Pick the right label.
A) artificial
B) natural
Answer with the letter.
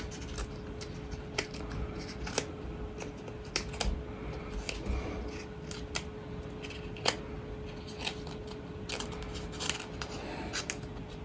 B